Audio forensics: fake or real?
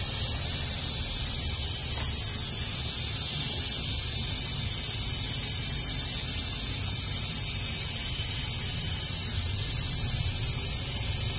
real